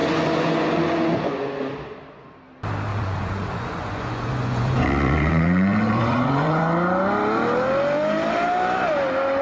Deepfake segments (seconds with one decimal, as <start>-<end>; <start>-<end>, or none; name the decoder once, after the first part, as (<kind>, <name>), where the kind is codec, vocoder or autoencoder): 0.0-1.6 (vocoder, Vocos); 2.9-6.6